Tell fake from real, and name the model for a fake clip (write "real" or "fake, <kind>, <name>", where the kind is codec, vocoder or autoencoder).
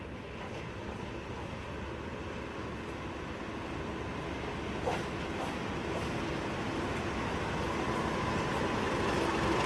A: real